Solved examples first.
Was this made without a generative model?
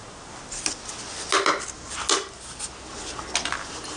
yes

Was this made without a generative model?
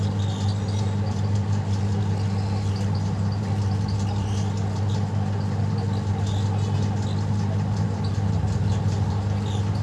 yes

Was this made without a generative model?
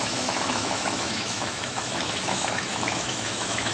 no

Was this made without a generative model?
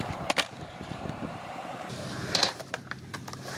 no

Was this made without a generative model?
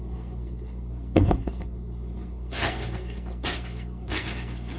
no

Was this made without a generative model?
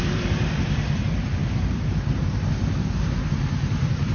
no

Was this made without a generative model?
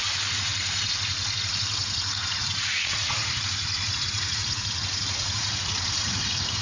no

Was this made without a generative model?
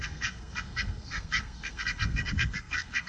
no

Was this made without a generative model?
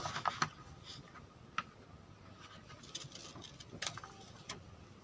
yes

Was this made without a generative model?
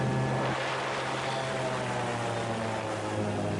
yes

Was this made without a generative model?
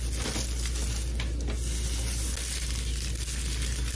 yes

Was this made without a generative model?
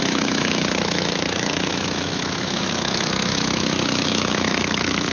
no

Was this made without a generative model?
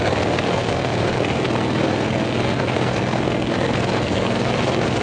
no